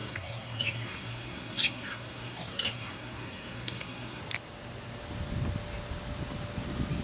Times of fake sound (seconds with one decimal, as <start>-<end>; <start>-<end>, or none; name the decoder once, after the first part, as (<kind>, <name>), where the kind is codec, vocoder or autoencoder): 0.0-4.2 (codec, SNAC)